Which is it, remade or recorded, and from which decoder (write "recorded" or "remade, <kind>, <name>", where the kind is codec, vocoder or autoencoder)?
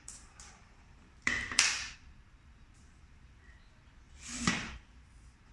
remade, vocoder, BigVGAN v2